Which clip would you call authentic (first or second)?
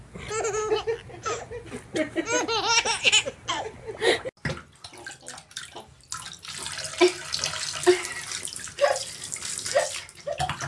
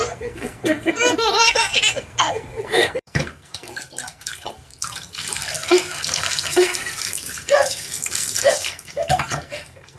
first